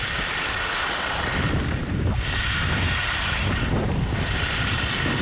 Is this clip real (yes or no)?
yes